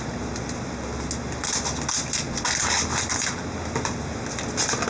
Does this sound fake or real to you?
real